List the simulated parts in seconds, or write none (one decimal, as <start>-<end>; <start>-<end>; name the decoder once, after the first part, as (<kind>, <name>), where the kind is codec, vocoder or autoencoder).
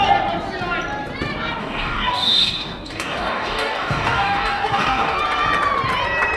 1.6-5.2 (codec, DAC)